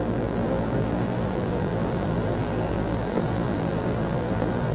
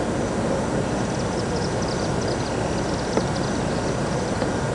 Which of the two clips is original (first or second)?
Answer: second